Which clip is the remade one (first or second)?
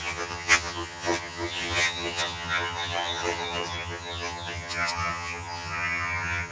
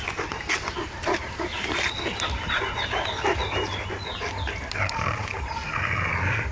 first